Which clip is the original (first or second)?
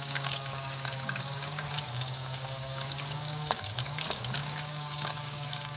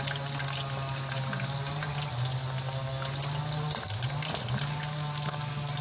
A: second